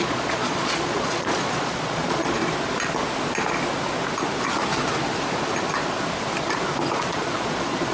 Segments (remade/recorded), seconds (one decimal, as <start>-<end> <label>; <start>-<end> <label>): 0.0-2.4 remade; 2.4-7.1 recorded; 7.1-7.9 remade